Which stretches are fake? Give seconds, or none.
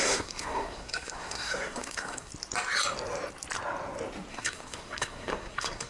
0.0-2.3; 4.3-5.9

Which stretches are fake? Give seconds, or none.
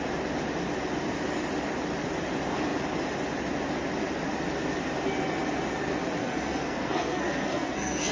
6.2-8.1